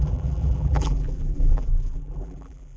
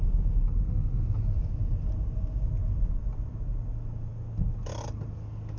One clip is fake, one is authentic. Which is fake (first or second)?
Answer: first